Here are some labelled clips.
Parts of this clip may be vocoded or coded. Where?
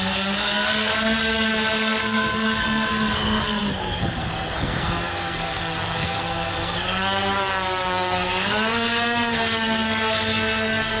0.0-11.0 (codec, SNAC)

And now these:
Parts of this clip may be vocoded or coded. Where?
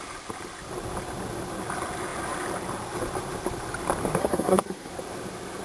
4.2-4.9 (codec, SNAC)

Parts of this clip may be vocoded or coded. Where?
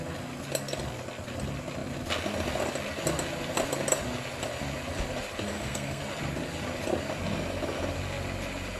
5.5-6.0 (codec, SNAC)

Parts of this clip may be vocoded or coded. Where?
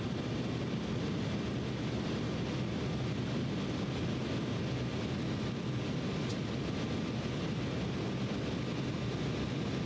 none